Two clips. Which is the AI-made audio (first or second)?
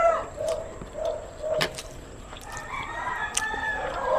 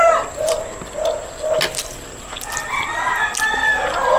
first